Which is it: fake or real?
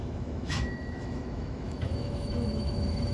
fake